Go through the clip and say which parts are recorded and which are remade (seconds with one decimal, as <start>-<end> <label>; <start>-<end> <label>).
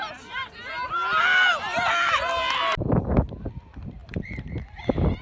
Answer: 0.0-4.0 recorded; 4.0-5.2 remade